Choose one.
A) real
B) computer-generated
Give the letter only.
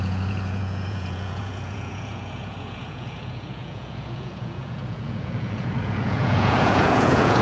B